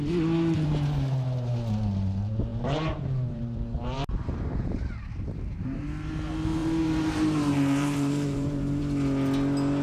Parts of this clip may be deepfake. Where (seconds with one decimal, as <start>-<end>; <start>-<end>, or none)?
2.5-5.8; 6.6-8.8